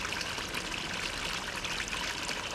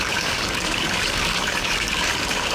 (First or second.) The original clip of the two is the first